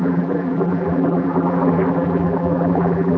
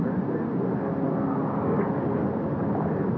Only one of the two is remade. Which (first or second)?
first